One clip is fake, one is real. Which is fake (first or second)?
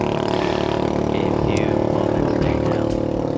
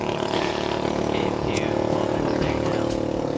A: second